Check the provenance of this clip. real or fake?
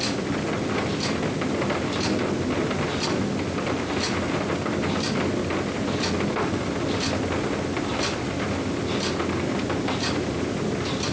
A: real